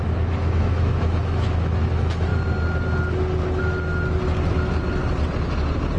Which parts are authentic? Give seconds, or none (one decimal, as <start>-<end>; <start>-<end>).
2.3-6.0